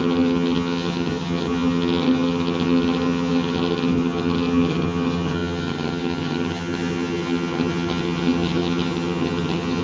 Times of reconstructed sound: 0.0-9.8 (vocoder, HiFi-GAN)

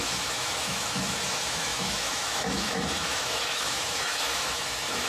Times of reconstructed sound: 0.0-5.1 (autoencoder, DAC-VAE)

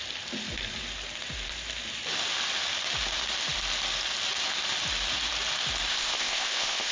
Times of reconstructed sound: 5.9-6.9 (codec, ZipCodec)

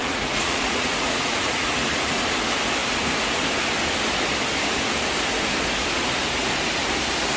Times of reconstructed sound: 0.0-2.2 (vocoder, Vocos)

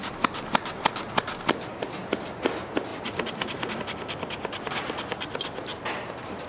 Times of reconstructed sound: 2.9-3.8 (vocoder, BigVGAN v2)

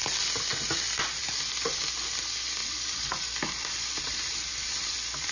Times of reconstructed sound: 2.6-5.3 (vocoder, BigVGAN v2)

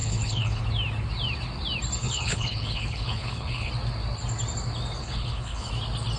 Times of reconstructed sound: 0.0-0.6 (codec, HILCodec); 2.0-3.7; 5.0-5.7

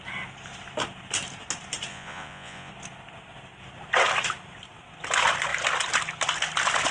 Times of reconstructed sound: 1.9-2.7 (vocoder, Vocos)